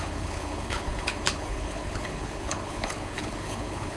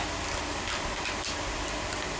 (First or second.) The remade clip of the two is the first